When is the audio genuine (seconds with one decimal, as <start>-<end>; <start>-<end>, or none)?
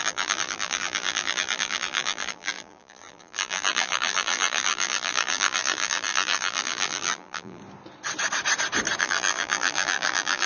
7.6-9.0